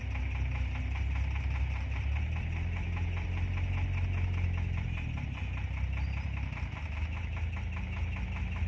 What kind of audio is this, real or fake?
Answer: real